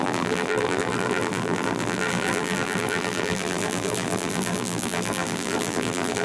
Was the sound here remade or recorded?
remade